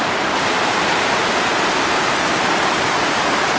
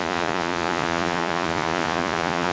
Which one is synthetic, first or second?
second